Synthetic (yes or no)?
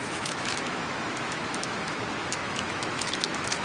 yes